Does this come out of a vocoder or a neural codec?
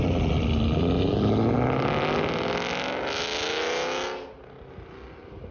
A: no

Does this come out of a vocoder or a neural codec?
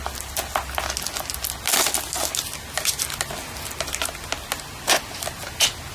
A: no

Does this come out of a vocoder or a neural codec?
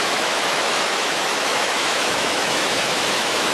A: yes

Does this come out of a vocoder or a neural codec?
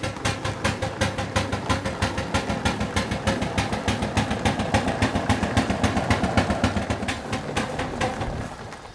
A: no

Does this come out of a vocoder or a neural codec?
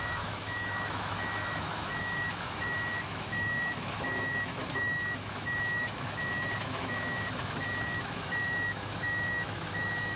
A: yes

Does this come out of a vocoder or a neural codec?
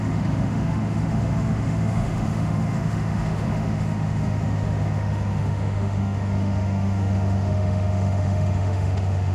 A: yes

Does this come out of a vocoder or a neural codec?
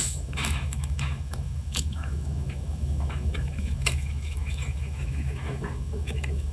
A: yes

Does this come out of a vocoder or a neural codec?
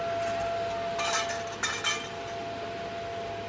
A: no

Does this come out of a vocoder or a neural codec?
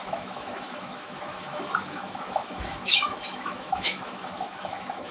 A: yes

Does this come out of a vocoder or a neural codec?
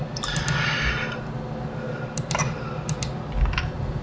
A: no